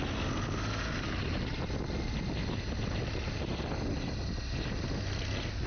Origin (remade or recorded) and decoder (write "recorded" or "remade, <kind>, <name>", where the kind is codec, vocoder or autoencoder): recorded